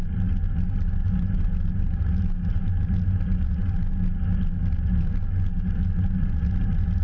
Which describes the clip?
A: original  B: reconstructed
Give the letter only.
A